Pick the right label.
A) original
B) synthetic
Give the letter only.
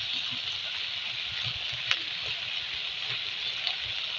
A